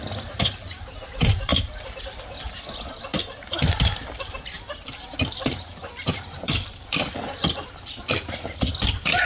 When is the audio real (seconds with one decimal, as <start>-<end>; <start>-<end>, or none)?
none